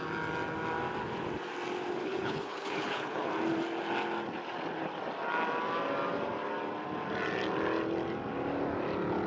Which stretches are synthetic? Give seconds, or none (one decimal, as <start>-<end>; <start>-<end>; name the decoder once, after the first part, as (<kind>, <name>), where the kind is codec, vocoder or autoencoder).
2.0-3.3 (codec, HILCodec)